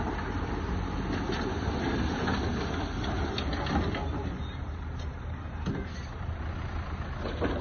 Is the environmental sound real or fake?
real